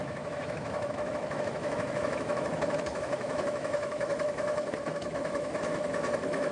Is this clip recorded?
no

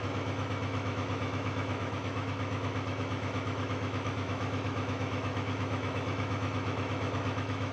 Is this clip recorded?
no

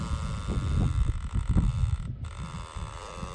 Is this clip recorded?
yes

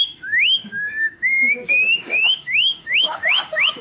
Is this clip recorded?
no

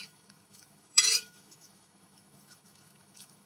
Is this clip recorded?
no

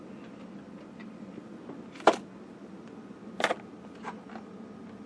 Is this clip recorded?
yes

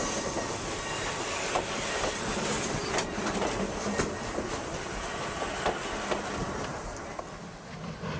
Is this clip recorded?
yes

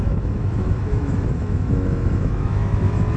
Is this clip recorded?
no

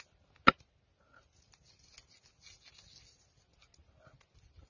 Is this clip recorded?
yes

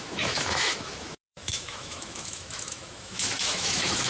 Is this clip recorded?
no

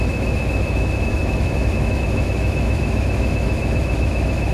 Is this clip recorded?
no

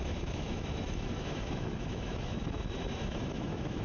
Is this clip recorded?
no